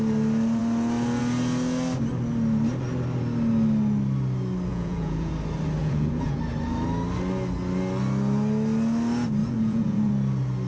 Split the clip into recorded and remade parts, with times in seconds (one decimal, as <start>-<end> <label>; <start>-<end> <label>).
0.0-4.7 recorded; 4.7-5.3 remade; 5.3-5.8 recorded; 5.8-6.4 remade; 6.4-9.4 recorded; 9.4-10.1 remade; 10.1-10.7 recorded